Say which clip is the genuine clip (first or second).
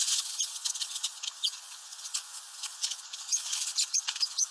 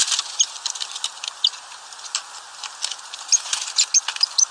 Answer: second